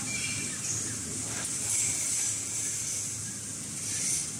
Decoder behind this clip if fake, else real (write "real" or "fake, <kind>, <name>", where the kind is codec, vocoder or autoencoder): real